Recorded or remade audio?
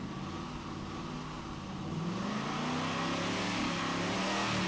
recorded